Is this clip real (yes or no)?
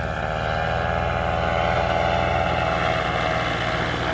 yes